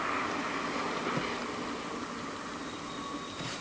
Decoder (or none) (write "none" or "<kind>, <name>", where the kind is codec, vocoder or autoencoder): none